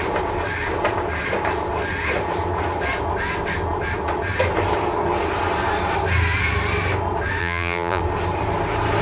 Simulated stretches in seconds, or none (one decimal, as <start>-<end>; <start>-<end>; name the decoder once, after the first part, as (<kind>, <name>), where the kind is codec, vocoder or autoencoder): 7.4-8.0 (vocoder, BigVGAN v2)

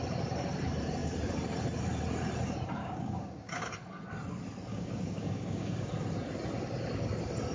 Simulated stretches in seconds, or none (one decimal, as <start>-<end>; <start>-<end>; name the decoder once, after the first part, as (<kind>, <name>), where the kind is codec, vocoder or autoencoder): 2.8-3.7 (codec, DAC); 4.7-5.9

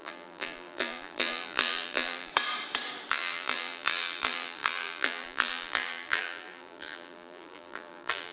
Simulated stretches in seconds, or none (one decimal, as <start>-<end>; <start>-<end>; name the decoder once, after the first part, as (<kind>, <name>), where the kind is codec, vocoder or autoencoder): 0.0-2.3 (vocoder, BigVGAN v2); 3.1-8.3

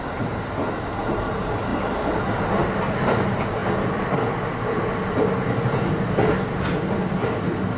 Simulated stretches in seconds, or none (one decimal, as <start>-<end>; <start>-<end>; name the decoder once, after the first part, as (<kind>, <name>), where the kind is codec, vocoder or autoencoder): none

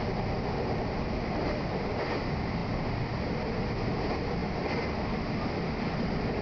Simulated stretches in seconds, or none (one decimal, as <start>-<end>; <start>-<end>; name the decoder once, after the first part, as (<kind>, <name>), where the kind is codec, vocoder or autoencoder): none

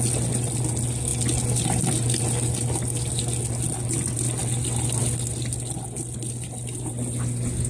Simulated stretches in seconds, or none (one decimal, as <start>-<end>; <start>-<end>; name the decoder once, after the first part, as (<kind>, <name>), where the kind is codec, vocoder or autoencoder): none